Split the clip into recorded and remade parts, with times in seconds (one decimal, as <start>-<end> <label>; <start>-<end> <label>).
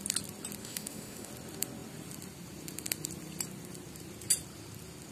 0.0-0.6 recorded; 0.6-1.3 remade; 1.3-5.1 recorded